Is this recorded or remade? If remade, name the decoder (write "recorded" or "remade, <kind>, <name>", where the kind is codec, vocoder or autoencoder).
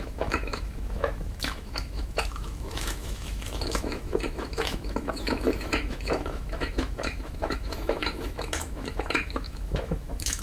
remade, autoencoder, DAC-VAE